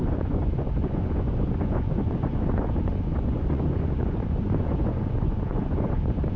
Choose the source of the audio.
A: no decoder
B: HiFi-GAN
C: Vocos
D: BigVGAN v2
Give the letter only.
C